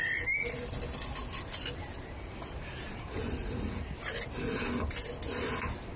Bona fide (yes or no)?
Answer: yes